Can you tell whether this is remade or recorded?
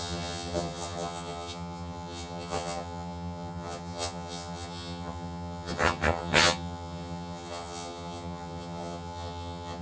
remade